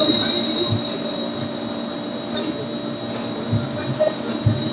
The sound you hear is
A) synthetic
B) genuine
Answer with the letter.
B